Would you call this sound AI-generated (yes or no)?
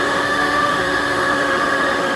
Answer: yes